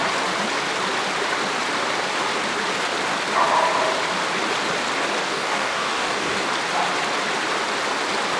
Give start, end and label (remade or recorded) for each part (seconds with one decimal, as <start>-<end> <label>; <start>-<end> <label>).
0.0-5.3 recorded; 5.3-6.5 remade; 6.5-8.4 recorded